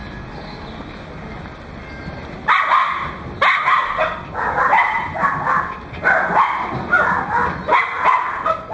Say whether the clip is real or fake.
real